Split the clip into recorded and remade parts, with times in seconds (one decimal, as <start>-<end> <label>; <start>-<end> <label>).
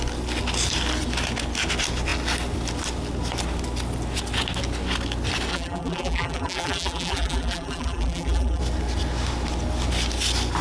0.0-5.5 recorded; 5.5-8.6 remade; 8.6-10.6 recorded